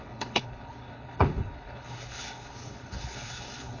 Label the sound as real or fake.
fake